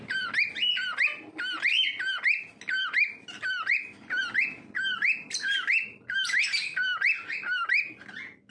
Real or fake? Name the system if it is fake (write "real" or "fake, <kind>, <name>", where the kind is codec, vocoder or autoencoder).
real